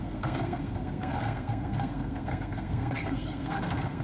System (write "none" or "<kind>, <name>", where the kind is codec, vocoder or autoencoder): codec, SNAC